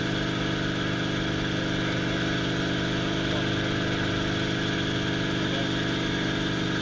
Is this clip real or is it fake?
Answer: real